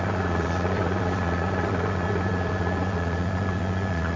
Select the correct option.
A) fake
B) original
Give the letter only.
A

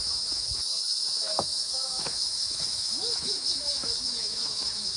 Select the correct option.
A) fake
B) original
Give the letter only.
A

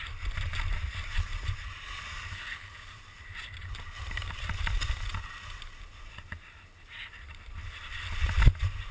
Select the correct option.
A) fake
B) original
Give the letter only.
B